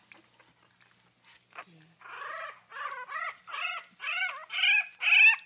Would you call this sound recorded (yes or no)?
yes